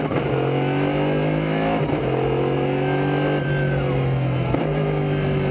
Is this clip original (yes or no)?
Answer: yes